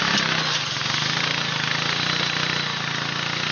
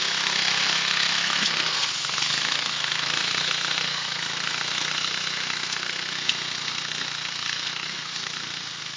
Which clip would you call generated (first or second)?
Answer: second